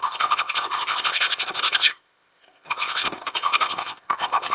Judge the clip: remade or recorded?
remade